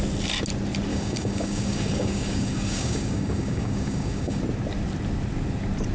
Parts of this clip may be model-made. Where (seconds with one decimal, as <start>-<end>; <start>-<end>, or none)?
0.9-4.4